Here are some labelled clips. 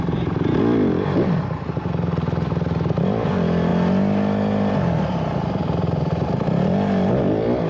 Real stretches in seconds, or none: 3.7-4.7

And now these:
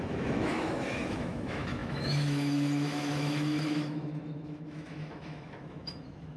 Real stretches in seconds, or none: none